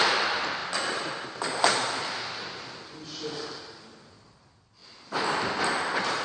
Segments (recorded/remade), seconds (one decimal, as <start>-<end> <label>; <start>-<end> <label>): 0.0-6.2 recorded